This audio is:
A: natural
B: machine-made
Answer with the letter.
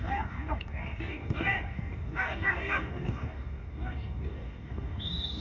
B